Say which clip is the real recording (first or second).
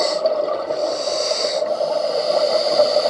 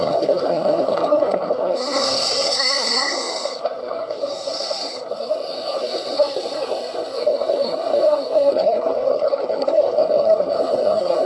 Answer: first